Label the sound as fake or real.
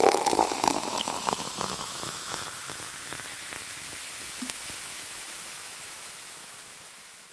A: fake